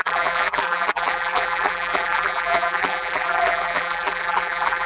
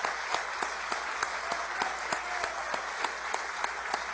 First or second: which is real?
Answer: second